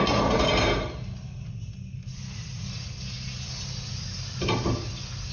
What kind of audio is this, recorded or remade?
recorded